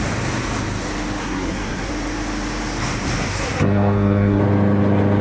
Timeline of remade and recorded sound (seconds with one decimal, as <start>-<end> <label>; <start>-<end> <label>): 0.0-1.2 recorded; 1.2-1.9 remade; 1.9-3.3 recorded; 3.3-4.4 remade; 4.4-5.2 recorded